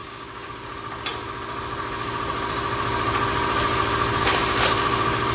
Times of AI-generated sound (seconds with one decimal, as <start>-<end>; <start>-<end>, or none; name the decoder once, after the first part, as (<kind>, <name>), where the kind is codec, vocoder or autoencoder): 0.0-0.5 (codec, DAC)